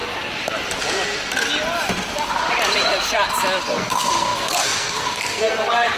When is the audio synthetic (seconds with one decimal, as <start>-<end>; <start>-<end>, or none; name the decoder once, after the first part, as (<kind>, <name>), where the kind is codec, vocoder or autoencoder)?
3.6-6.0 (codec, SNAC)